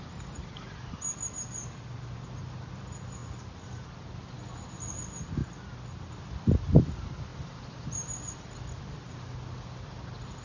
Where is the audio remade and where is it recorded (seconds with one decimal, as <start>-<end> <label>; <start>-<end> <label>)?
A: 0.0-10.4 recorded